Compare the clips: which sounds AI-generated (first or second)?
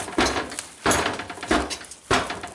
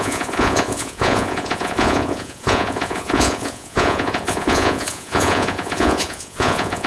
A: second